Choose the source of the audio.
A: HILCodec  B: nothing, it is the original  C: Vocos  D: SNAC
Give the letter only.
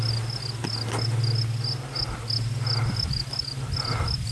B